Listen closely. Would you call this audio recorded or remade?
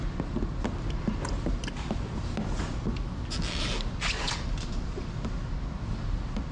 recorded